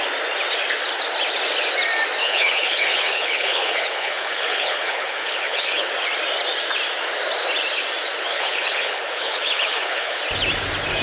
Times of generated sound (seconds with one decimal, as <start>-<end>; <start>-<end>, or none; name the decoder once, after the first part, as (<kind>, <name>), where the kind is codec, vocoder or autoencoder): 2.2-5.9 (codec, HILCodec); 8.3-10.2